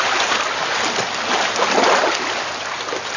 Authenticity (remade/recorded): recorded